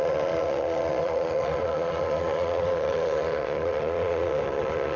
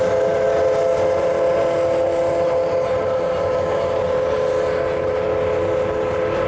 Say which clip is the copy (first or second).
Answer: first